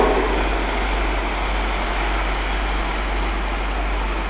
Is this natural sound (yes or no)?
yes